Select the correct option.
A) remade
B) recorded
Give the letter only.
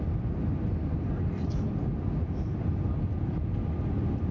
B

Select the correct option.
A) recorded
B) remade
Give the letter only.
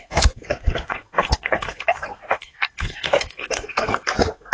B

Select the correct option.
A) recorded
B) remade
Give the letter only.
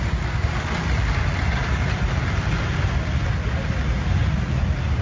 A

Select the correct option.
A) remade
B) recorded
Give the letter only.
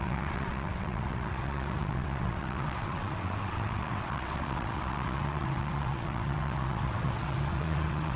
A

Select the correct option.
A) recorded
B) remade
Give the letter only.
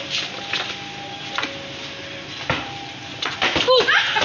A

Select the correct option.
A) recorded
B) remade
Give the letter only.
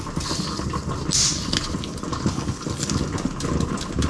A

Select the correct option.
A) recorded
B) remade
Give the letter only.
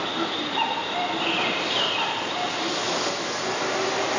A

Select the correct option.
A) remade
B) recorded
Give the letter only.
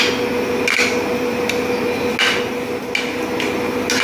B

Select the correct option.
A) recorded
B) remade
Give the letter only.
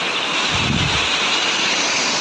A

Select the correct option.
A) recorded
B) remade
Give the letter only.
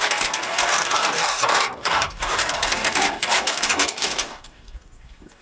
B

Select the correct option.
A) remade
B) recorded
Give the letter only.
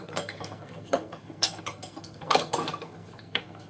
A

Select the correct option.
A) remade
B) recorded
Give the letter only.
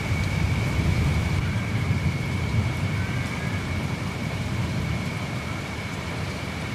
A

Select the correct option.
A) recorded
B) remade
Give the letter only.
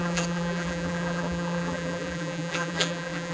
B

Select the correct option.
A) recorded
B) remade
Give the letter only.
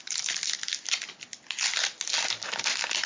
A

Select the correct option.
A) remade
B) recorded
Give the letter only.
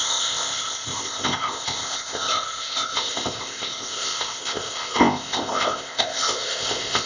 A